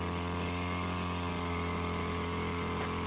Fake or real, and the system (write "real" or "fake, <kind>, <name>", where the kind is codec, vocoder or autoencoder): real